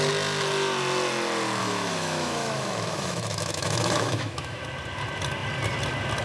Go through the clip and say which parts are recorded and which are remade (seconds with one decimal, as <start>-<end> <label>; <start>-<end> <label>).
0.0-1.6 recorded; 1.6-4.6 remade; 4.6-6.2 recorded